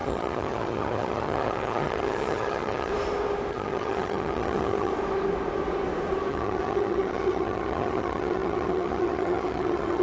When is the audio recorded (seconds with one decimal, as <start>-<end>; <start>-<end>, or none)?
2.9-3.5; 4.9-6.3